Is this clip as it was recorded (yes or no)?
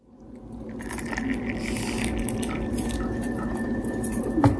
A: yes